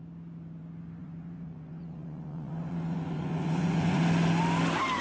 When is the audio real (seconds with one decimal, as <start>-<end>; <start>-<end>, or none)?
0.0-1.0; 4.0-5.0